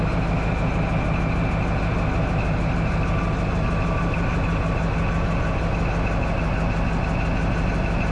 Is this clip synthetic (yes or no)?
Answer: no